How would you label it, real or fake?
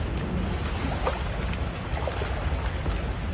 real